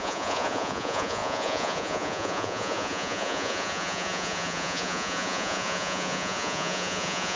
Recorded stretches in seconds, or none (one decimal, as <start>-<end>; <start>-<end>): none